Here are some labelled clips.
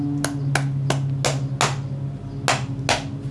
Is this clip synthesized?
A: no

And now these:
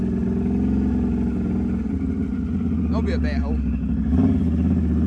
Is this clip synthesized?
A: no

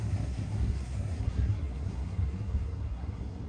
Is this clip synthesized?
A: yes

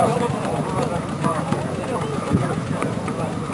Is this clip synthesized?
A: yes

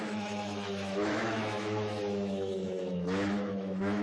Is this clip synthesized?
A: yes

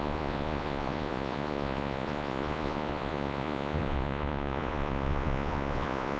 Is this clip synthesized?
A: yes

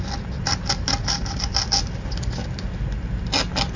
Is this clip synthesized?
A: no